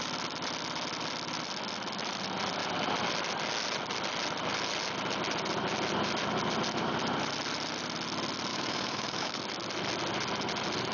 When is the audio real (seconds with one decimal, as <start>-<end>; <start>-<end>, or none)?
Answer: 0.0-8.5; 9.4-10.9